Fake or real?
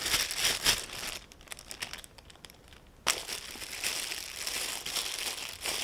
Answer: real